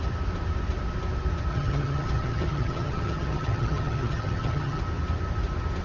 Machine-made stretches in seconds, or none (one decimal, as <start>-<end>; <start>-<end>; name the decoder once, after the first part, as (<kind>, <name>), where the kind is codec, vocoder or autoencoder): 1.5-4.8 (vocoder, HiFi-GAN)

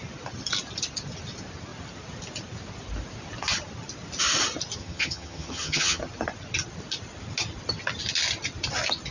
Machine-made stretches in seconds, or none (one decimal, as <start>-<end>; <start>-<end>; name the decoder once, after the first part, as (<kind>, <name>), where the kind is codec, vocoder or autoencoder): 4.8-6.0 (vocoder, HiFi-GAN)

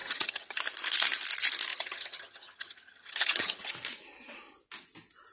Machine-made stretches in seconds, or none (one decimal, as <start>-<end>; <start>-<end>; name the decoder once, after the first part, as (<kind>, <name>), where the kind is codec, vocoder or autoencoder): 0.0-0.6 (vocoder, HiFi-GAN); 1.7-3.7

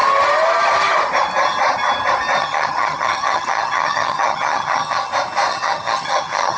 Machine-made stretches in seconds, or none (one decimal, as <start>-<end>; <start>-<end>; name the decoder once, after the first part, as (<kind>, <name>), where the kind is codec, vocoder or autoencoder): 2.4-5.1 (vocoder, HiFi-GAN); 5.5-6.6

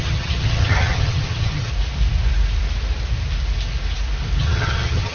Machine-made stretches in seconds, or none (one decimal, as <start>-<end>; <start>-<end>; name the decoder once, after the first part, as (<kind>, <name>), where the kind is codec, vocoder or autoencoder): 0.0-1.7 (vocoder, HiFi-GAN); 4.4-5.1

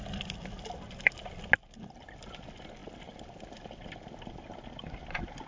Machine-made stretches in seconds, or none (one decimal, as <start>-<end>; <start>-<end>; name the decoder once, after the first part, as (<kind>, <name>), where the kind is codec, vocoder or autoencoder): none

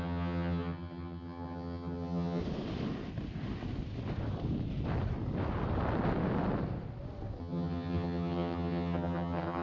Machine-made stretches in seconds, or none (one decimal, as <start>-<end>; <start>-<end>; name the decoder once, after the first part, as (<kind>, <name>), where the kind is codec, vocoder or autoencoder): 0.0-2.4 (vocoder, HiFi-GAN); 7.4-9.6

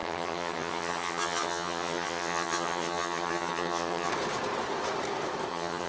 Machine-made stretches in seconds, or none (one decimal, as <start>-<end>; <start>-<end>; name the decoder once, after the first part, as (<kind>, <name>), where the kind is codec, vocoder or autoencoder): 0.0-4.1 (vocoder, HiFi-GAN); 5.5-5.9